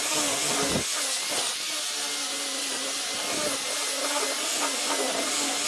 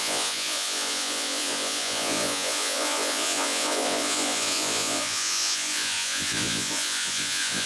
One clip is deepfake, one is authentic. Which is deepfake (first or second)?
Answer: second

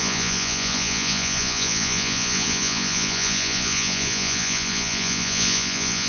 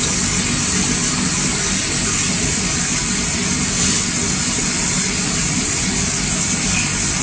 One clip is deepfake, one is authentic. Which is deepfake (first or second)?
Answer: first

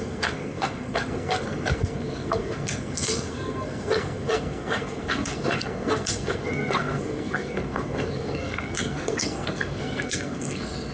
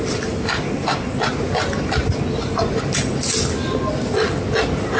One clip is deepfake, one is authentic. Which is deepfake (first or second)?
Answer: first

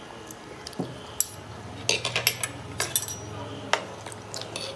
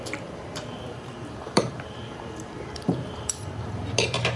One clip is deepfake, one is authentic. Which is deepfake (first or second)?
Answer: second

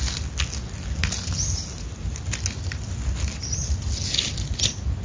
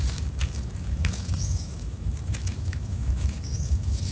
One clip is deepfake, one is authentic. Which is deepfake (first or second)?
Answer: second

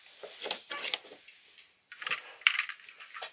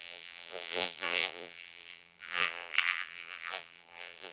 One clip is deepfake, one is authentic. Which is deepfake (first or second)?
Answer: second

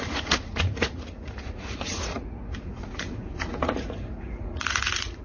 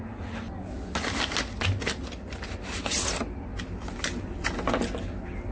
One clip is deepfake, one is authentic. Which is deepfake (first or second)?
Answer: first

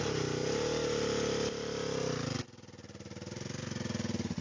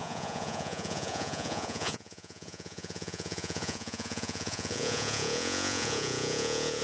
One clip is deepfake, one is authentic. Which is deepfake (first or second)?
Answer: second